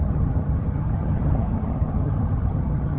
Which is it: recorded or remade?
remade